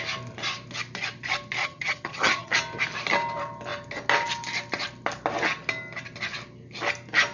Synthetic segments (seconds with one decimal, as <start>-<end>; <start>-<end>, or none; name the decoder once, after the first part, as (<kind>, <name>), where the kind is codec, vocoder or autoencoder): 1.6-2.5 (vocoder, HiFi-GAN)